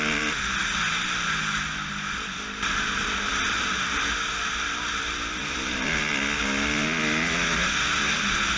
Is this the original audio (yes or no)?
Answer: yes